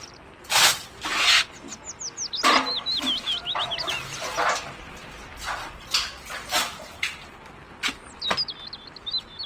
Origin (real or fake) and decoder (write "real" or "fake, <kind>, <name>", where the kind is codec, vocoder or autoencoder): real